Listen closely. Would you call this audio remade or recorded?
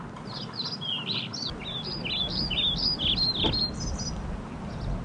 recorded